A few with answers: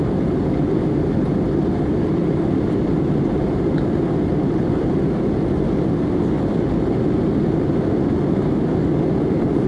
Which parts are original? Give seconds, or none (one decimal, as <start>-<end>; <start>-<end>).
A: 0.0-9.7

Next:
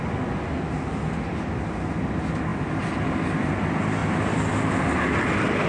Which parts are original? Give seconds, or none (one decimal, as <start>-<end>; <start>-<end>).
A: 0.0-2.5; 3.5-5.7

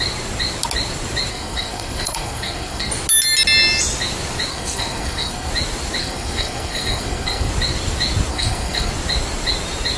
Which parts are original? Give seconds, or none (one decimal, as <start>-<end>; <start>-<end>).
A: 0.0-1.3; 2.9-4.5; 5.5-6.0; 7.5-8.3; 8.9-10.0

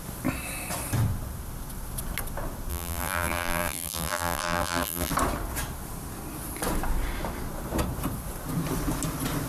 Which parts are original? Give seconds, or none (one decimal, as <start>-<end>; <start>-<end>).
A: 0.0-2.7; 5.1-9.5